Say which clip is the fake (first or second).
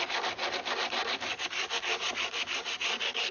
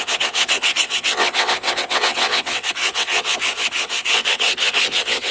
second